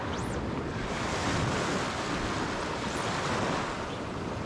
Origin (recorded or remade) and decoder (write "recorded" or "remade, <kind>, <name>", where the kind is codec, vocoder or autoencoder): recorded